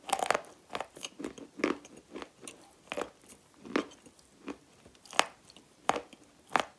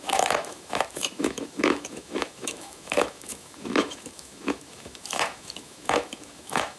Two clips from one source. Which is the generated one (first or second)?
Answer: second